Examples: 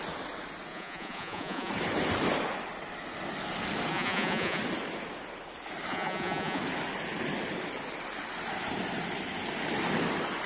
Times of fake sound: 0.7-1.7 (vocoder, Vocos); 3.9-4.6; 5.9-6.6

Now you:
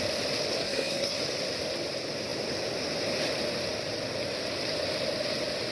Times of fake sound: 0.6-1.2 (codec, SNAC)

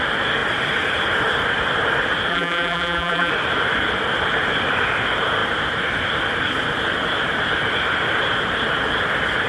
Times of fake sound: 2.3-3.3 (vocoder, BigVGAN v2)

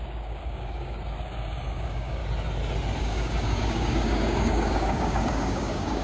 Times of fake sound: 0.0-2.2 (codec, DAC); 3.0-6.0

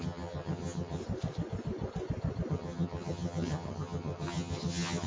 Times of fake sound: 0.0-1.0 (vocoder, HiFi-GAN); 2.5-5.1

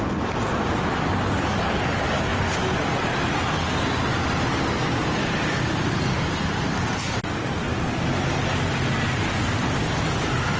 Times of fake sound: none